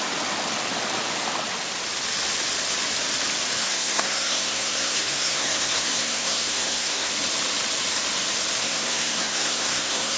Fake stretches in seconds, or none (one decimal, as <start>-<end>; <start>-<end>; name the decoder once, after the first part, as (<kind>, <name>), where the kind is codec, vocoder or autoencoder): 3.6-7.1 (codec, SNAC); 8.6-10.2